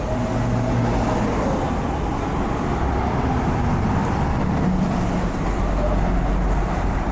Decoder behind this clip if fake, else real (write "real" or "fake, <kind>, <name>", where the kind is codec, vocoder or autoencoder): real